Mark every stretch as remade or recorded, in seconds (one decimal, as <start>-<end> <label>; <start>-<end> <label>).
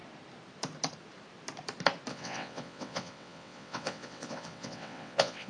0.0-2.1 recorded; 2.1-5.5 remade